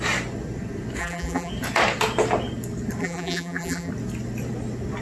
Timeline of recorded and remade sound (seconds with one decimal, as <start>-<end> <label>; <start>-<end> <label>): 0.0-1.0 recorded; 1.0-1.5 remade; 1.5-3.0 recorded; 3.0-3.9 remade; 3.9-5.0 recorded